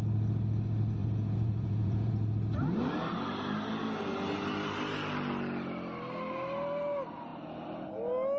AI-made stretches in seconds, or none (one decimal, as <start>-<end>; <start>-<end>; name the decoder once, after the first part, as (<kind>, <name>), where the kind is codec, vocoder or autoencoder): 1.0-2.1 (vocoder, Vocos)